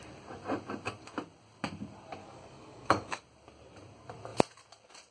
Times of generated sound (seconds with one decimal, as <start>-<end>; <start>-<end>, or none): 2.2-3.2